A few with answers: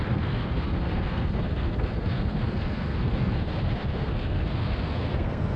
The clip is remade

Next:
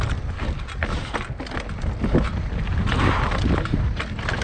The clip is recorded